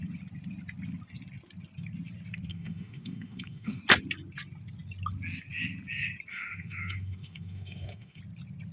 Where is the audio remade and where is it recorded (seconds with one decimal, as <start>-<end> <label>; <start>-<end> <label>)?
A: 0.0-2.5 recorded; 2.5-3.8 remade; 3.8-6.3 recorded; 6.3-8.2 remade; 8.2-8.7 recorded